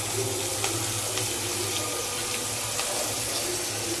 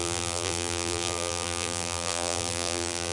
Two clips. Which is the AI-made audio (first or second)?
second